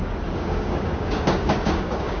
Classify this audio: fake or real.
fake